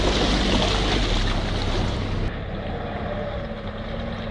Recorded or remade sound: recorded